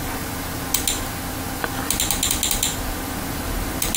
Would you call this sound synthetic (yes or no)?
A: no